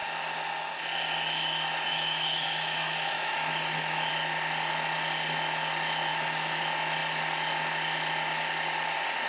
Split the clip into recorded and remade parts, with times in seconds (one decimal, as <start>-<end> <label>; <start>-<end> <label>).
0.0-1.9 recorded; 1.9-4.1 remade; 4.1-6.1 recorded; 6.1-6.6 remade; 6.6-9.3 recorded